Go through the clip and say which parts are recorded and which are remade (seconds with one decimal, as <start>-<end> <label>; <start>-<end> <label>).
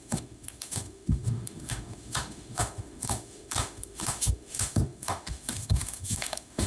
0.0-6.7 remade